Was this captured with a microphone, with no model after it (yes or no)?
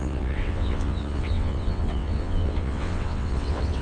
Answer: no